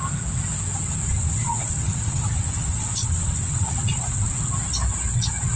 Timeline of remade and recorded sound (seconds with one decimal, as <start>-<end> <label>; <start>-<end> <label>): 0.0-1.1 recorded; 1.1-4.5 remade; 4.5-5.6 recorded